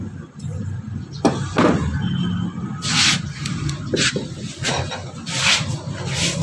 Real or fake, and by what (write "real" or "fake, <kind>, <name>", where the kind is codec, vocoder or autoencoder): real